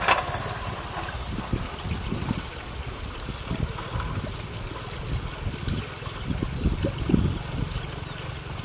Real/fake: real